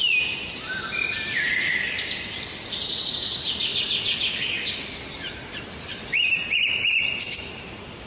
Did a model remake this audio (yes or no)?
yes